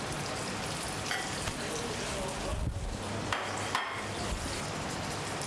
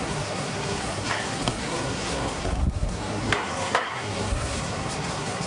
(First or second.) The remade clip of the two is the second